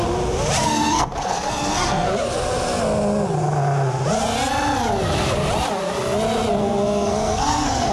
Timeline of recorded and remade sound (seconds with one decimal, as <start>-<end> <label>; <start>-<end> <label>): 0.0-0.6 recorded; 0.6-2.1 remade; 2.1-6.6 recorded; 6.6-7.9 remade